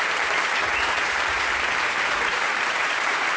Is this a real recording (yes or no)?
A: no